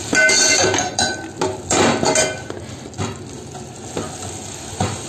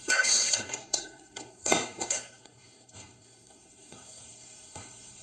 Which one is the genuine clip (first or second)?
first